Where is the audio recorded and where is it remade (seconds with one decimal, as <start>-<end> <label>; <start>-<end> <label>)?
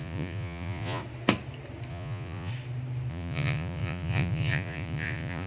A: 0.0-1.0 remade; 1.0-1.9 recorded; 1.9-2.5 remade; 2.5-3.1 recorded; 3.1-5.5 remade